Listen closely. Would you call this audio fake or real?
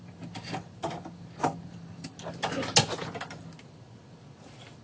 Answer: real